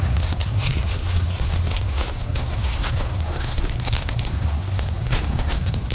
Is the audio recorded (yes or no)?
no